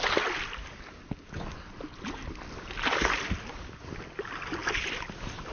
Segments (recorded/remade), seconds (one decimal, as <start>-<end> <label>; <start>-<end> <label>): 0.0-5.5 recorded